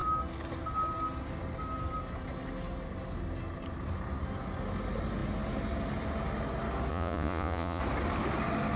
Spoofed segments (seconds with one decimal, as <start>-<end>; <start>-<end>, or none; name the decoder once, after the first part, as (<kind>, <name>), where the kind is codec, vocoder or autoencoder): 6.9-7.8 (vocoder, Vocos)